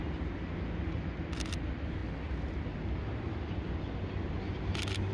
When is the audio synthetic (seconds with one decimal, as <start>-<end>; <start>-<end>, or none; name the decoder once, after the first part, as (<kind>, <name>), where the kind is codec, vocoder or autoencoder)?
none

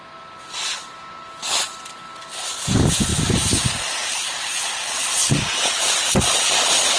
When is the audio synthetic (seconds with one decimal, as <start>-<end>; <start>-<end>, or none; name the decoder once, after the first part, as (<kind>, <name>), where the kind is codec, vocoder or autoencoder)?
3.1-6.5 (vocoder, BigVGAN v2)